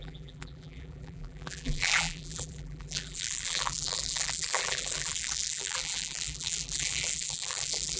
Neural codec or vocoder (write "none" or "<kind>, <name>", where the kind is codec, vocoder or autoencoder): vocoder, BigVGAN v2